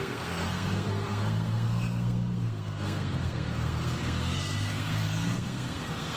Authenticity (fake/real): fake